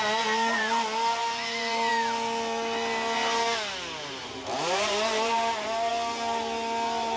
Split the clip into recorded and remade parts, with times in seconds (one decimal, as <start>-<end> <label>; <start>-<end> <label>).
0.0-1.2 recorded; 1.2-1.9 remade; 1.9-4.2 recorded; 4.2-5.9 remade; 5.9-7.2 recorded